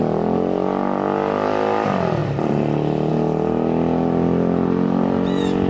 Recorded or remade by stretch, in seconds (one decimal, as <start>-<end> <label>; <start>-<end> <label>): 0.0-5.7 recorded